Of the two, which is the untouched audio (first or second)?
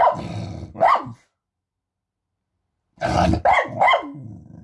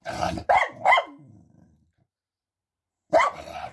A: first